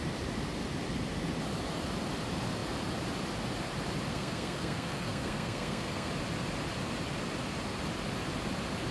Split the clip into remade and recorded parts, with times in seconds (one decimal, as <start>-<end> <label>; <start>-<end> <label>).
0.0-4.1 recorded; 4.1-6.1 remade; 6.1-8.9 recorded